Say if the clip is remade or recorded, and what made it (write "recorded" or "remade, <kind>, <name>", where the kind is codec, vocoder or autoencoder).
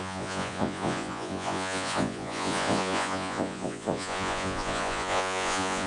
remade, vocoder, Vocos